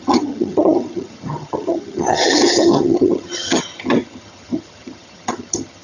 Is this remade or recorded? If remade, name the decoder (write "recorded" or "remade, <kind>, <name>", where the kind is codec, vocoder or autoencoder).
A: remade, vocoder, HiFi-GAN